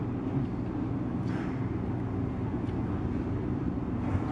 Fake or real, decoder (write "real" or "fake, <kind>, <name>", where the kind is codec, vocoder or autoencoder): real